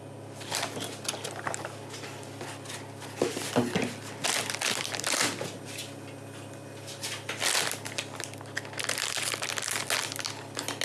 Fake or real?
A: real